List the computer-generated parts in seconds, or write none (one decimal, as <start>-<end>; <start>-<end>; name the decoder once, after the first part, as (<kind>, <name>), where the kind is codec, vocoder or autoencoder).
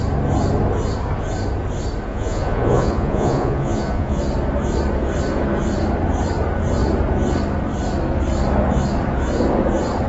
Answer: 2.1-4.2 (vocoder, Vocos)